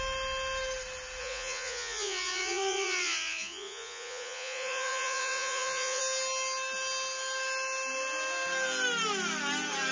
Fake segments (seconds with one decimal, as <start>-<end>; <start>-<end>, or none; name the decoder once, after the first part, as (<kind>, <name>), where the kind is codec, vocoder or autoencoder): 1.2-6.0 (vocoder, Vocos)